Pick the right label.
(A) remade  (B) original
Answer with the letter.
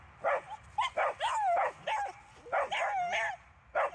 B